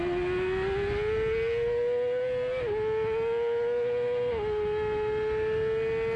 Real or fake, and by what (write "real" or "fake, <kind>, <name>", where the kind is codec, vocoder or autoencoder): real